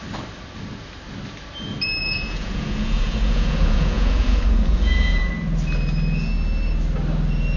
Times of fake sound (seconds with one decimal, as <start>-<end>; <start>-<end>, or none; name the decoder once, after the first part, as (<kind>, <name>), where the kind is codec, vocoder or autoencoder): 2.0-5.3 (vocoder, Vocos)